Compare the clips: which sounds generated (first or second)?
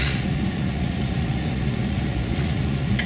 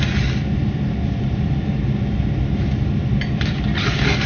first